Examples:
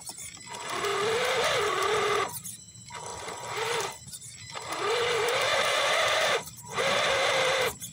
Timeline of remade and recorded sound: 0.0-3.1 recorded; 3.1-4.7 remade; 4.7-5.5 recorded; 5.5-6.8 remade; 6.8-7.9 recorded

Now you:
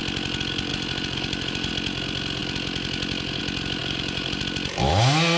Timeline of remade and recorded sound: 0.0-0.7 recorded; 0.7-1.7 remade; 1.7-3.8 recorded; 3.8-4.4 remade; 4.4-5.4 recorded

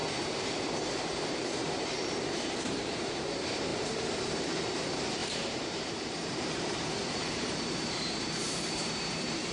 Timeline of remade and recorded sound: 0.0-9.5 remade

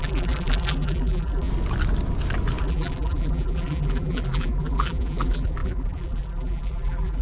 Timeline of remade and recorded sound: 0.0-1.5 remade; 1.5-2.6 recorded; 2.6-7.2 remade

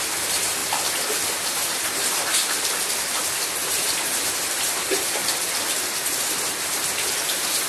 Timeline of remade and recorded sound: 0.0-0.6 remade; 0.6-1.3 recorded; 1.3-2.4 remade; 2.4-3.5 recorded; 3.5-5.2 remade; 5.2-6.2 recorded; 6.2-7.7 remade

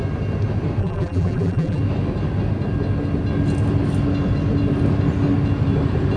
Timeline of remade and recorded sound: 0.0-0.8 recorded; 0.8-1.8 remade; 1.8-6.2 recorded